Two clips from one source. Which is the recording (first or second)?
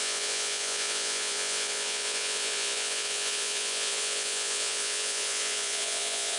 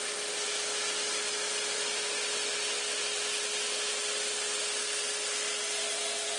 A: second